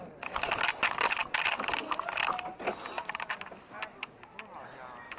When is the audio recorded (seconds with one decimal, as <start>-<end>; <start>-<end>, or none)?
0.0-5.2